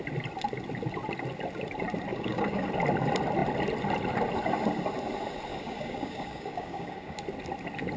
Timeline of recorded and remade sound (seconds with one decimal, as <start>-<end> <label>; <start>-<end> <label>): 0.0-2.1 recorded; 2.1-2.7 remade; 2.7-5.5 recorded; 5.5-7.2 remade; 7.2-8.0 recorded